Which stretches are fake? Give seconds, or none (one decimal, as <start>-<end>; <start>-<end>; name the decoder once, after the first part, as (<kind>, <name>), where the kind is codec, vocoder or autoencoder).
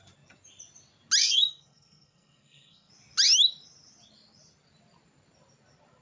1.2-2.9 (codec, SNAC)